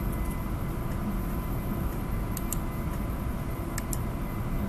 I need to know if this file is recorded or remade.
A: recorded